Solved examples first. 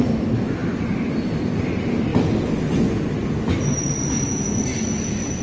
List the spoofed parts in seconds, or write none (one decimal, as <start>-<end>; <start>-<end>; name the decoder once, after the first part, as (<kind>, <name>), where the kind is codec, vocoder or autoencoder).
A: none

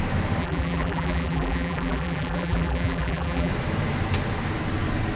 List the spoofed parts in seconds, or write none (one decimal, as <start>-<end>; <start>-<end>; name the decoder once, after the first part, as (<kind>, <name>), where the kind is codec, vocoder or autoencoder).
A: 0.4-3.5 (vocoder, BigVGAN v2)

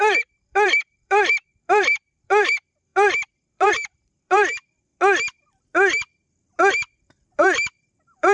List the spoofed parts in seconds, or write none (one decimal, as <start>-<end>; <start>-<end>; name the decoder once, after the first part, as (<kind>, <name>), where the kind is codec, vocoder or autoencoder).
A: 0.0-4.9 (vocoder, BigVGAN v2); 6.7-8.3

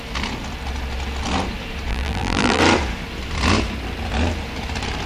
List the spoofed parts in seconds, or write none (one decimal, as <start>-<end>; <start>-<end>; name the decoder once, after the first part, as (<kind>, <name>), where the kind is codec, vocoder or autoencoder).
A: 1.9-2.6 (vocoder, BigVGAN v2)

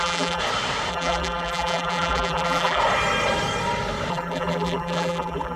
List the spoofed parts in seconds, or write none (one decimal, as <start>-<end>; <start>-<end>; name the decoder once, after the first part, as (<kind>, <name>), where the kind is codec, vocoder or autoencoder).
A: 0.0-0.4 (vocoder, BigVGAN v2); 0.9-2.8; 4.1-5.6

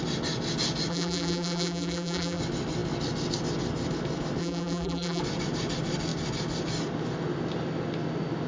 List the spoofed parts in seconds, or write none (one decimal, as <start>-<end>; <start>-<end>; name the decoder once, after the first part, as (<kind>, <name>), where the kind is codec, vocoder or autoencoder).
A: 0.9-2.4 (vocoder, BigVGAN v2); 4.4-5.2

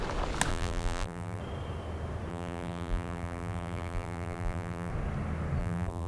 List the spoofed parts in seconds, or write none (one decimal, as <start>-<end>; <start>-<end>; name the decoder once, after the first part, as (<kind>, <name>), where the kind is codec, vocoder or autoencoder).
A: 0.5-1.4 (vocoder, BigVGAN v2); 2.3-4.9; 5.6-6.1